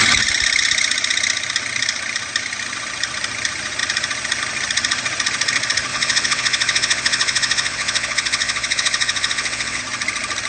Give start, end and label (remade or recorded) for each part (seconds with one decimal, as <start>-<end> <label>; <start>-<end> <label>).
0.0-5.9 recorded; 5.9-9.8 remade; 9.8-10.5 recorded